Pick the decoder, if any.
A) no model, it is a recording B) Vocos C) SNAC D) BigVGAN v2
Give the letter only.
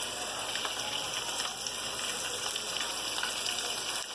A